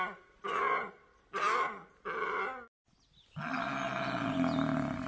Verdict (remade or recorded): recorded